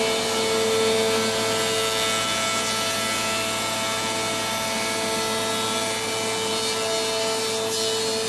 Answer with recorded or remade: recorded